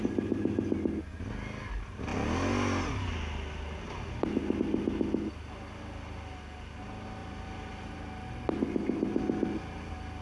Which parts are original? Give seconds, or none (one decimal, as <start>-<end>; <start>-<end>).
0.0-7.2; 7.7-10.2